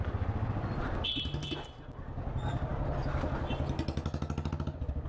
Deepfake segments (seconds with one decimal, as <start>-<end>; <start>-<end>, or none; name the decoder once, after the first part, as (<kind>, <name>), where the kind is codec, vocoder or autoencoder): none